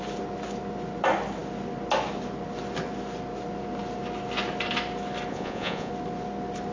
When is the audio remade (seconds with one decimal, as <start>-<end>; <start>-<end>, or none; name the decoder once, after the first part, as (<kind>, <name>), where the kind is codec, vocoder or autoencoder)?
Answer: 5.3-5.9 (vocoder, Vocos)